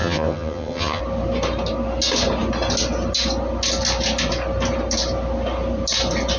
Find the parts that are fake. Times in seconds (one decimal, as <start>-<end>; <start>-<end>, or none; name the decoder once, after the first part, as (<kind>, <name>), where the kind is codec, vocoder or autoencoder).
0.0-1.0 (vocoder, HiFi-GAN)